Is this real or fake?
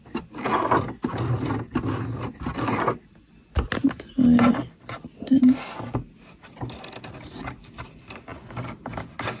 real